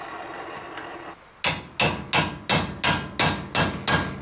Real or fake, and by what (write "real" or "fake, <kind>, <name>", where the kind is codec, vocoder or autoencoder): real